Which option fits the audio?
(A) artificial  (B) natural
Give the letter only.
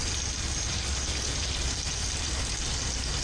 B